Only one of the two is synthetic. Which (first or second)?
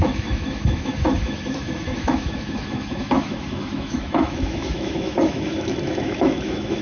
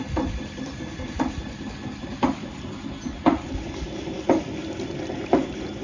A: first